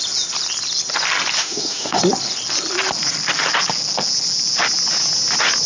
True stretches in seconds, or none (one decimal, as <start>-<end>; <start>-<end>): 0.0-1.4; 2.0-5.7